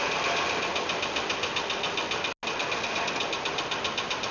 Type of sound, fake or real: real